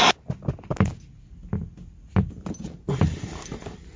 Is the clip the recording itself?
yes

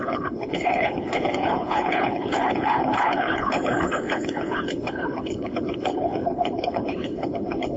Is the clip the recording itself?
no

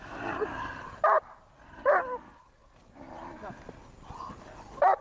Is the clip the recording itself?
yes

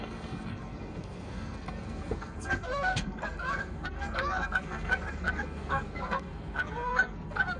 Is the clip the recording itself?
no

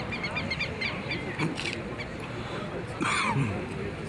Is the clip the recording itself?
no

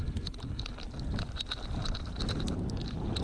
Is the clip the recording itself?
yes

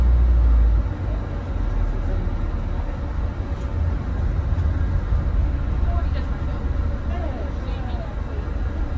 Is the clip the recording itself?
yes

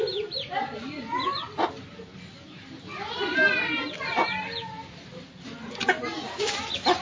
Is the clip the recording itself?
yes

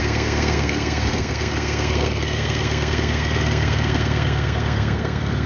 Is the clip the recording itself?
no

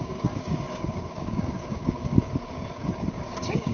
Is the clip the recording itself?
no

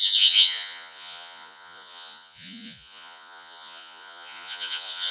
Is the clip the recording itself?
no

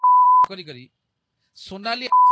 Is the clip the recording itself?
no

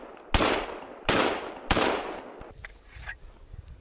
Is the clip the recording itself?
yes